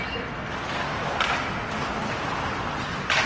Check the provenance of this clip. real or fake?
real